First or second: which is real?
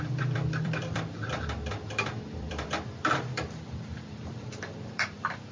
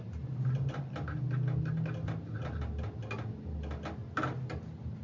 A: second